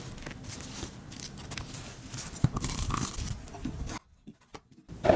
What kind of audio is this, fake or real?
real